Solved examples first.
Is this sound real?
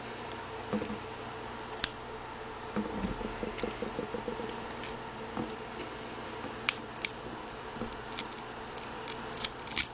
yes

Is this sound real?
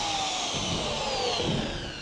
yes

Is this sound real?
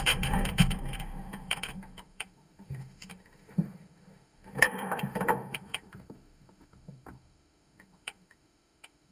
no